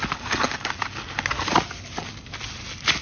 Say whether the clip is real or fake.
real